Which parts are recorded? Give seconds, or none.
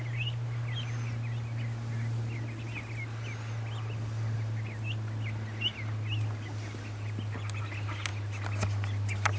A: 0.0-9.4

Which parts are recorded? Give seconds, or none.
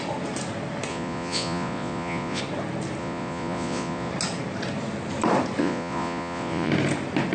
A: 0.0-0.9; 2.4-3.0; 4.1-5.6; 6.7-7.3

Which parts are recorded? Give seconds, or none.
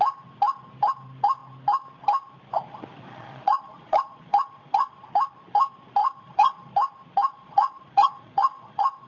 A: 0.0-3.1; 5.0-6.0; 6.7-7.2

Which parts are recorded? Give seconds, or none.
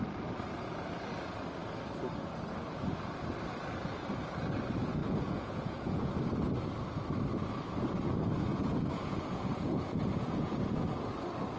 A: 0.0-5.0; 6.1-8.5; 11.1-11.6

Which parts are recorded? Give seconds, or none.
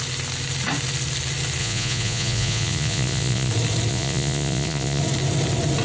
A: 0.0-1.6; 3.5-3.9; 5.0-5.8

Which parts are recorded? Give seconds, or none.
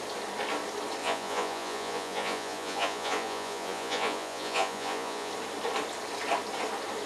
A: 0.0-1.0; 5.3-7.1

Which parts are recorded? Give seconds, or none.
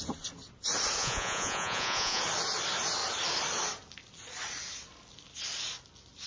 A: 0.0-1.0; 2.2-6.3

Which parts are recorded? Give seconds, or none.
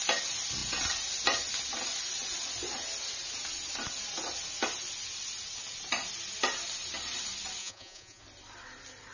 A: 0.0-7.6; 8.2-9.1